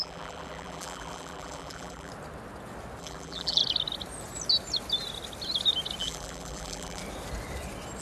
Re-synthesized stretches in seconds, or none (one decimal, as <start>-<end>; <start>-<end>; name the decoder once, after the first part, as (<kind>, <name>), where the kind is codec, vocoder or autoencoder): 0.0-2.1 (vocoder, BigVGAN v2); 3.0-3.6; 6.0-7.0